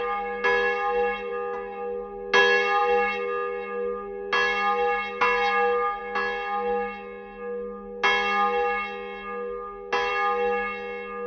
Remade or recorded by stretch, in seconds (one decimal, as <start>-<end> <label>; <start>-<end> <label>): 0.0-11.3 recorded